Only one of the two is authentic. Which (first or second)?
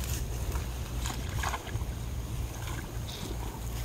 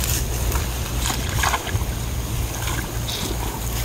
second